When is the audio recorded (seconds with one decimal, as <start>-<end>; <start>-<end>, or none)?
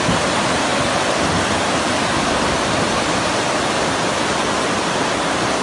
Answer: 0.0-5.6